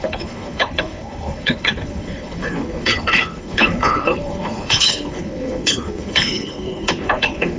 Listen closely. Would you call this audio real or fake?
fake